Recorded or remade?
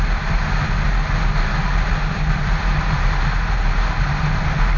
recorded